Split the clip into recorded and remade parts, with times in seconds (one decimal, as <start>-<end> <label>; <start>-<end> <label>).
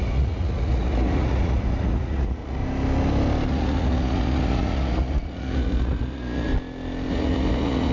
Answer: 0.0-2.6 remade; 2.6-3.5 recorded; 3.5-6.5 remade; 6.5-7.1 recorded; 7.1-7.9 remade